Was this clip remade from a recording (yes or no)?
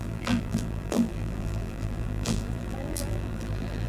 yes